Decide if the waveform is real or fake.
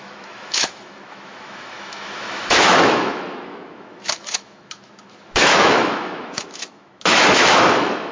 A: fake